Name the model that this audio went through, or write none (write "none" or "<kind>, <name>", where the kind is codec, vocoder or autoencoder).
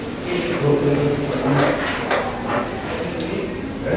none